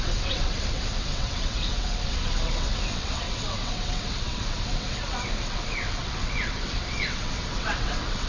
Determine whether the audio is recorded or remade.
remade